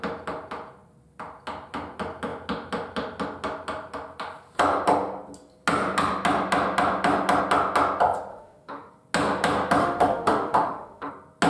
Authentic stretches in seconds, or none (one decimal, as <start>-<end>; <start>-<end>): 0.0-8.3; 8.9-9.8; 11.1-11.5